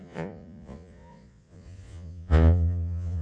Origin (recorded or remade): remade